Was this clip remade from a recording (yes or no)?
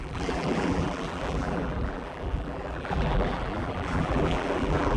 yes